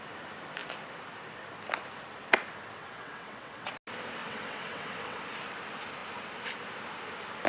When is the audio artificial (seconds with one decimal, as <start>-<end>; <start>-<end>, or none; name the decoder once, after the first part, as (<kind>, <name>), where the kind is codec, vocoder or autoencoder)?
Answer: 2.8-3.7 (vocoder, WaveNeXt); 4.2-5.2